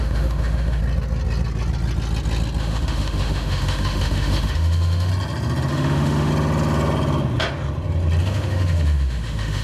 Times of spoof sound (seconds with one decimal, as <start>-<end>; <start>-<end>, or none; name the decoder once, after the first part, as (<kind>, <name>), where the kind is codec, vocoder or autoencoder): 0.0-0.8 (autoencoder, DAC-VAE); 2.6-5.1; 5.7-6.3; 8.2-9.6